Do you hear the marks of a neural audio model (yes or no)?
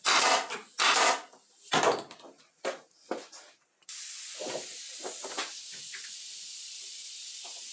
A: no